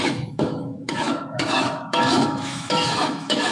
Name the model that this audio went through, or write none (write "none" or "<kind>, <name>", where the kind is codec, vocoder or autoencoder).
autoencoder, DAC-VAE